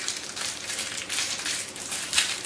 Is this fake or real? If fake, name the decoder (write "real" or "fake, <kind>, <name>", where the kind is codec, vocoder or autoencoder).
fake, vocoder, BigVGAN v2